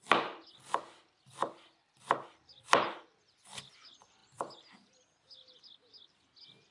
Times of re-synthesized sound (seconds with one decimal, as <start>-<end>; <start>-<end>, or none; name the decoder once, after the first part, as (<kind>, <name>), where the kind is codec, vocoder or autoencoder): none